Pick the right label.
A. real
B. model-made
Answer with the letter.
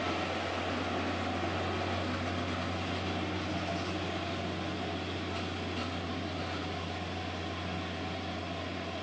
A